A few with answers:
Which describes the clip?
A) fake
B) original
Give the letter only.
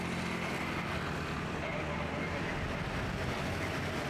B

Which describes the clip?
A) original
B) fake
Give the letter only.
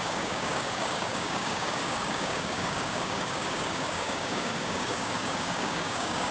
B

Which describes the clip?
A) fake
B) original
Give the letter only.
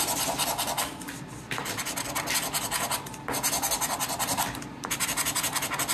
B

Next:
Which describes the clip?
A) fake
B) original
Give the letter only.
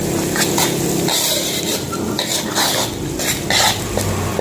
B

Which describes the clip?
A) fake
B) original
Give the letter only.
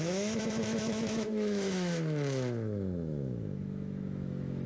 A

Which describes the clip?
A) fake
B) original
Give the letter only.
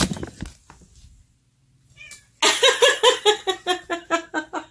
B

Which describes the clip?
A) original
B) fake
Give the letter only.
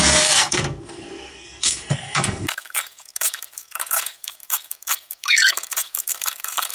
B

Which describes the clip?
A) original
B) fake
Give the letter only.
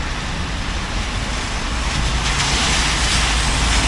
A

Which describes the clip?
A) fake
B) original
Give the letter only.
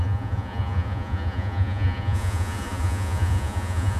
A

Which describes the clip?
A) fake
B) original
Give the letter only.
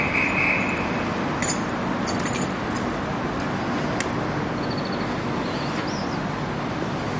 B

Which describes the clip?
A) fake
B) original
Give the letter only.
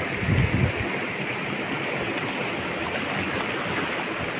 B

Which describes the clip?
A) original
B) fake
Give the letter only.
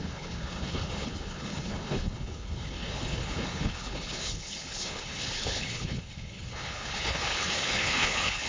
B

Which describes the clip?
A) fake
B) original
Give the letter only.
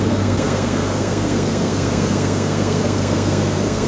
A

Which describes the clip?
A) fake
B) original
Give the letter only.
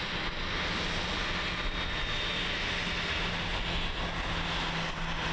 B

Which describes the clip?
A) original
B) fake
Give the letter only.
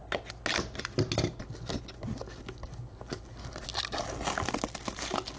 A